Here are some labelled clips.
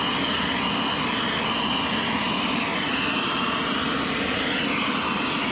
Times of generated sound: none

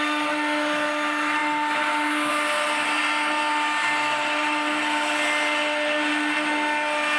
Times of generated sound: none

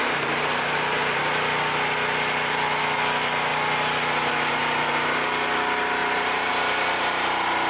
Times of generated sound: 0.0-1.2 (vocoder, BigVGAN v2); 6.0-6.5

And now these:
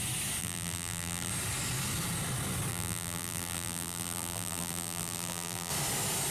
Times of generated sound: 0.4-1.3 (vocoder, BigVGAN v2); 2.7-5.7

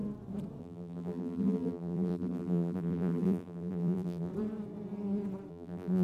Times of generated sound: 0.6-4.3 (vocoder, BigVGAN v2); 5.5-6.0